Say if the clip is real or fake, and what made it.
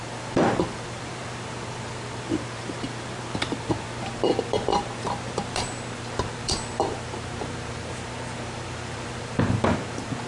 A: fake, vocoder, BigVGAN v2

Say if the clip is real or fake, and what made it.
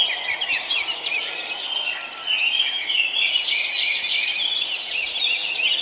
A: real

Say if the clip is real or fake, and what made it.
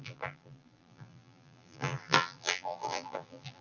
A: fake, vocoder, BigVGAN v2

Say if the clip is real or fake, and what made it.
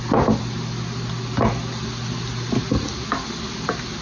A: real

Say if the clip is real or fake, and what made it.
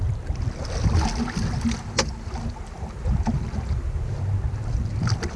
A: real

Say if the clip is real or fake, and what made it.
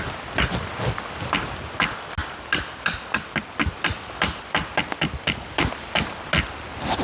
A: real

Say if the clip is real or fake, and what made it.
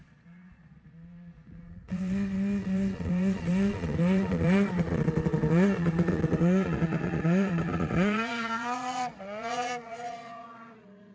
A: fake, vocoder, Vocos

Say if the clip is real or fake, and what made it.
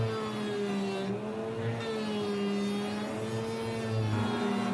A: real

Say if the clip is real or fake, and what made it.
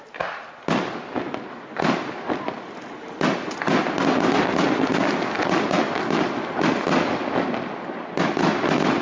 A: real